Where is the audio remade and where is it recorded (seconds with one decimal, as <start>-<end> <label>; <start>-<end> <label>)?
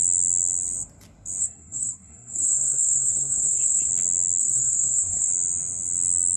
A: 0.0-1.4 recorded; 1.4-3.9 remade; 3.9-4.4 recorded; 4.4-5.3 remade; 5.3-6.4 recorded